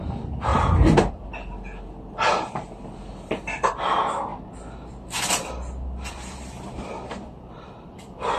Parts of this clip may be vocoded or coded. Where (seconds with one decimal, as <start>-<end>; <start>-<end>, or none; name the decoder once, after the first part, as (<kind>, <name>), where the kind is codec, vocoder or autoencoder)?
0.0-0.5 (vocoder, BigVGAN v2); 1.1-4.3; 6.1-8.4